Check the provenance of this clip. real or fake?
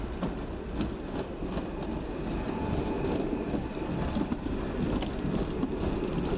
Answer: real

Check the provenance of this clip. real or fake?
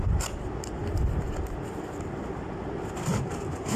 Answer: real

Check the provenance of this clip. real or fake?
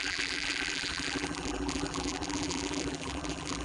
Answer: fake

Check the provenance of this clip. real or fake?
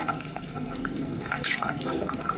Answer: fake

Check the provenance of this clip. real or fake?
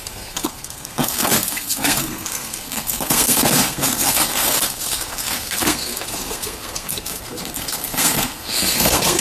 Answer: fake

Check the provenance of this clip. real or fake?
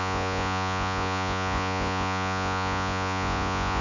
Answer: fake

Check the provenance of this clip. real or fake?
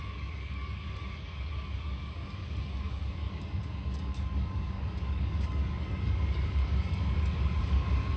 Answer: fake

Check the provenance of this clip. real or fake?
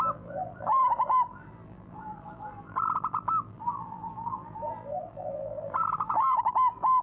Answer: fake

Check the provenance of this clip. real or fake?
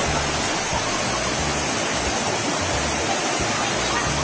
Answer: real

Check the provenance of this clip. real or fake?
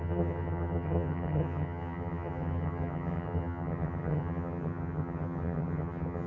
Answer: fake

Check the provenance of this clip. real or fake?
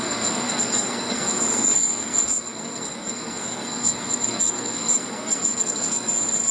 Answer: fake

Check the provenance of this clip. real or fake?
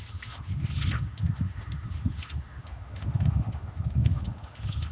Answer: fake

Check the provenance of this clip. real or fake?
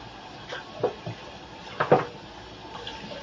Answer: real